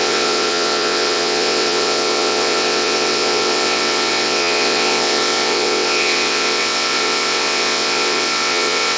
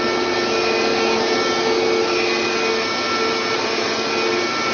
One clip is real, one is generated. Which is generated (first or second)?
first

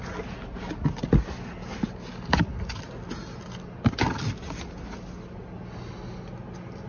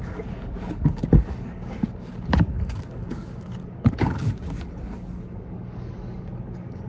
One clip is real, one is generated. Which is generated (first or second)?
second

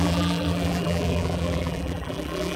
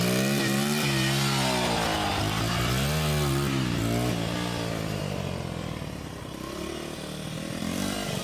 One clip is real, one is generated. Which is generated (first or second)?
first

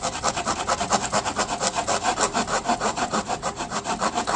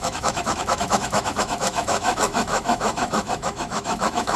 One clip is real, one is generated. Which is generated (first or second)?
second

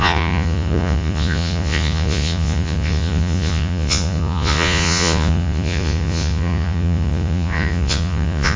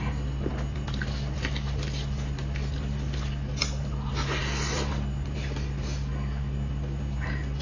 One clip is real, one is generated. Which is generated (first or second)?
first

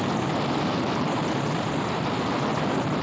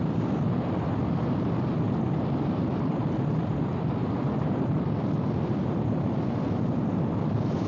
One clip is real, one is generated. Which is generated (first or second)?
second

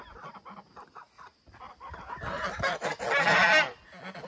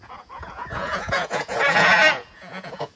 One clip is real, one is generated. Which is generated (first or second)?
second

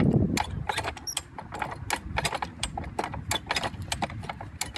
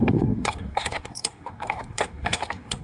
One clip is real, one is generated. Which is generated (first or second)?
second